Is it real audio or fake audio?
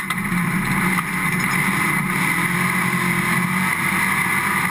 real